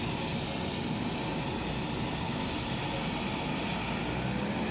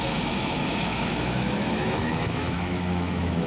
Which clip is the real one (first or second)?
first